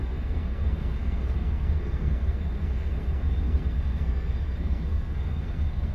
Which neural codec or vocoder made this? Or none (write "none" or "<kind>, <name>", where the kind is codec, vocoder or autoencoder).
codec, SNAC